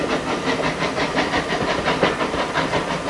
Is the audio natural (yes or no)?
yes